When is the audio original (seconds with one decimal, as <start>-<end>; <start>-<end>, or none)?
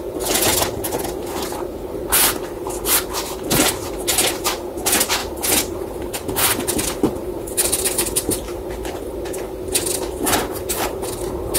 0.0-5.2; 9.1-11.6